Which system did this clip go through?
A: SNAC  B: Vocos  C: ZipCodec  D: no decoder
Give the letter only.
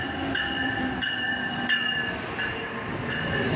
D